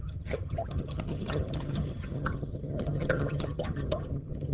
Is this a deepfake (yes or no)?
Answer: yes